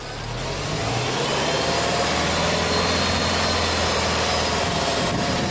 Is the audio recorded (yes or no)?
yes